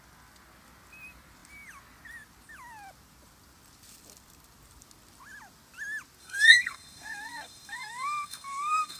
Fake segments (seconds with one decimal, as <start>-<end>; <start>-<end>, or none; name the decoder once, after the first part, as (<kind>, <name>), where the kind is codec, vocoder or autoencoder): 6.2-9.0 (codec, SNAC)